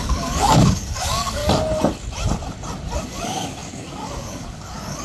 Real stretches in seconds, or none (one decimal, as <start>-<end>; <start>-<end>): 1.4-3.0

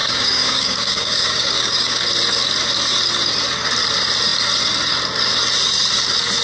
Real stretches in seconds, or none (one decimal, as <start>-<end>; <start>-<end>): 2.0-6.4

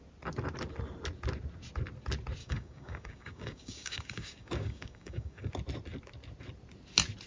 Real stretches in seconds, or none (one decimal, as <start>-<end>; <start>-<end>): 0.0-2.4; 5.5-7.3

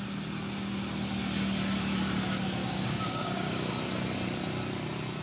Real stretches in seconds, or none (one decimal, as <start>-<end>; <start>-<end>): 0.0-2.6; 3.7-5.2

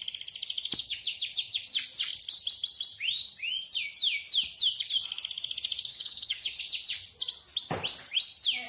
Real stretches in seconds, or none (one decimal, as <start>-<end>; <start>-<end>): 0.0-0.8; 1.6-5.9; 6.6-8.7

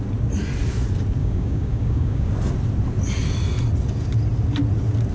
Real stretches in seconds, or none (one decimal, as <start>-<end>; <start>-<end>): 0.0-1.2; 2.3-5.1

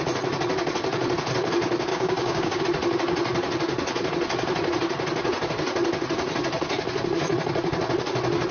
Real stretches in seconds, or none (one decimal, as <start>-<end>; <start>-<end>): 0.0-1.9; 2.6-8.5

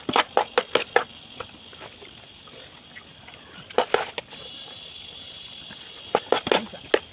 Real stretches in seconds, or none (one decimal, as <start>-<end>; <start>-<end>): 0.0-7.1